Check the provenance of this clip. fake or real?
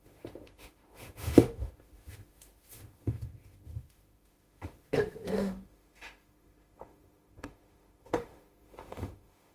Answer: fake